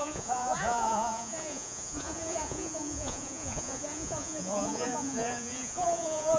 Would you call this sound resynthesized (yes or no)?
yes